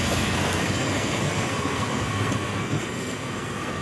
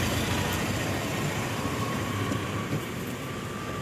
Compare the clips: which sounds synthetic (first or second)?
first